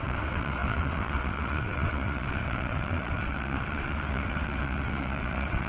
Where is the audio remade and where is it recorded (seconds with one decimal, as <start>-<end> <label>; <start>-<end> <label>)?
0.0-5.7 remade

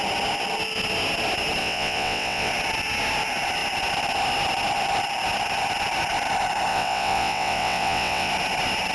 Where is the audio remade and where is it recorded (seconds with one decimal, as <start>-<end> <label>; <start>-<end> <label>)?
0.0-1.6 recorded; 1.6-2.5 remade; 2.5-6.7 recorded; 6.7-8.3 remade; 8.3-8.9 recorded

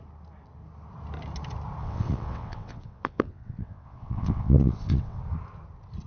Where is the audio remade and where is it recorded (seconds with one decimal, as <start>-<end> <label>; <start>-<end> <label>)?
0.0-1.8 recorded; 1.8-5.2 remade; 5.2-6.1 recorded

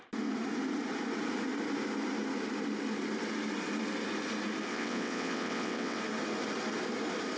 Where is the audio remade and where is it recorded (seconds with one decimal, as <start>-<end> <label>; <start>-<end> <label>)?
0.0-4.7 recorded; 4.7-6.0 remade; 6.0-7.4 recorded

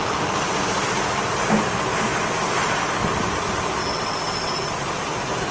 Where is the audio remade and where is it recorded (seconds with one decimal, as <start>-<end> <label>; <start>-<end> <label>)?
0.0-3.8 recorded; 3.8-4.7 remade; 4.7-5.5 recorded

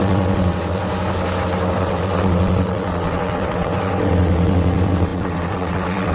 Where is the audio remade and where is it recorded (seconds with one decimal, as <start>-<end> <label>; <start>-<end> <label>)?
0.0-0.8 remade; 0.8-1.8 recorded; 1.8-6.1 remade